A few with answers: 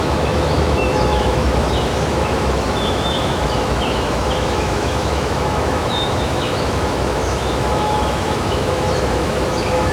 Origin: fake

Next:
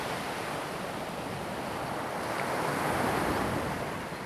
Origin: real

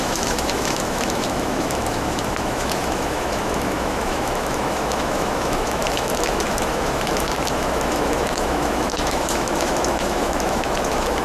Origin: fake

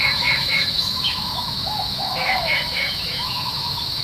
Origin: fake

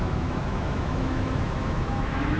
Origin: fake